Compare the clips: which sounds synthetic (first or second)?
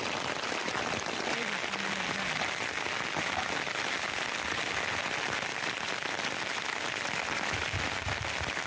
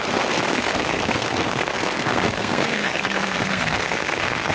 second